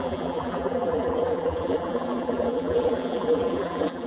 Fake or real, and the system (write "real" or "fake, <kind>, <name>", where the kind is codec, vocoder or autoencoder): fake, vocoder, BigVGAN v2